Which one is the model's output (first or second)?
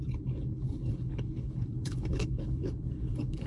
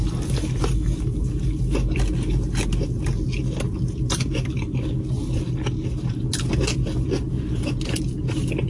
first